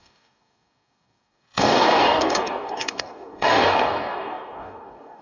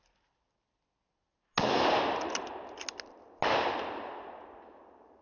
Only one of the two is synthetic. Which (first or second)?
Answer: first